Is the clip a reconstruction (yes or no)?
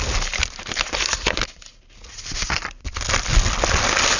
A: no